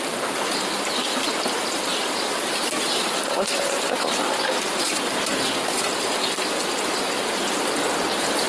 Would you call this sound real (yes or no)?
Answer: yes